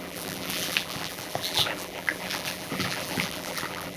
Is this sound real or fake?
fake